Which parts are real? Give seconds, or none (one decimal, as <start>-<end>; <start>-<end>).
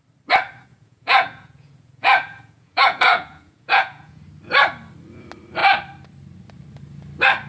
0.0-0.7; 4.2-7.5